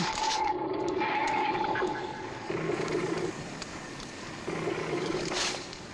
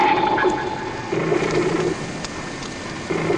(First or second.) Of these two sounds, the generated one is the first